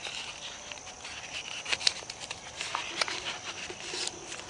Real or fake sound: real